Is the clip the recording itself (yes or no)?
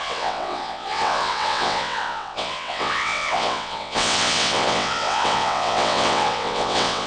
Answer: no